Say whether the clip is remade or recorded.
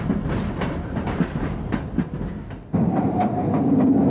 recorded